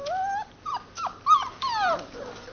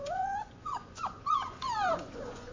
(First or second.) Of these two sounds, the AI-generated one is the second